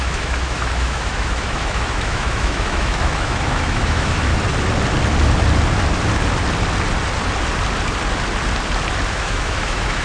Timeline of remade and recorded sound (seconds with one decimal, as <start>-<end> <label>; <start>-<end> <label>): 0.0-4.3 remade; 4.3-9.1 recorded; 9.1-10.0 remade